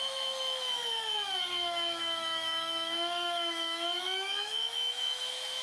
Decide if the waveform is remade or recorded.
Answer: remade